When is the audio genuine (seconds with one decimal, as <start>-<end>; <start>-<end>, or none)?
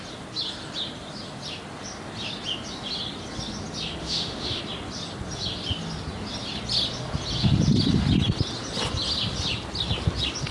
0.0-4.0; 4.6-10.5